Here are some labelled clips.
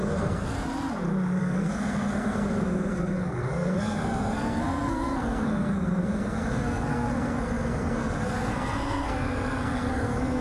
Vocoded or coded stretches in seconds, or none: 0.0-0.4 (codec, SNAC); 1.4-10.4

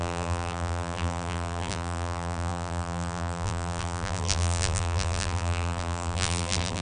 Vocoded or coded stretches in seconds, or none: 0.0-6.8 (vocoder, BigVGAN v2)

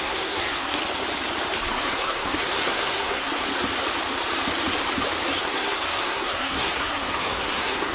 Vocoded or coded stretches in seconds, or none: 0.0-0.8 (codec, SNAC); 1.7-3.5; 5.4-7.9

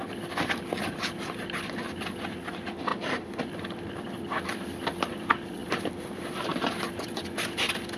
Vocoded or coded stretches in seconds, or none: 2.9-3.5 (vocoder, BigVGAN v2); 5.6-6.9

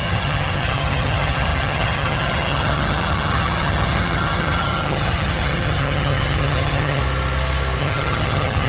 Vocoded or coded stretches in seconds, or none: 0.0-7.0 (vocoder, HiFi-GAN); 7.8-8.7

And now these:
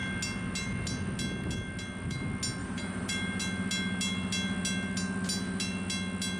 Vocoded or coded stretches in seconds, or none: 2.6-3.4 (vocoder, BigVGAN v2)

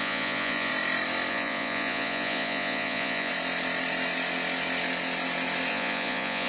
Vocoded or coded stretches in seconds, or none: 0.0-0.7 (vocoder, Vocos); 1.3-3.3; 5.7-6.5

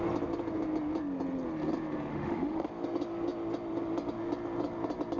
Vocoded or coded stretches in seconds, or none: 2.1-2.7 (autoencoder, DAC-VAE)